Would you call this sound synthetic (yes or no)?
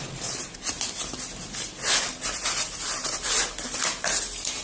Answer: no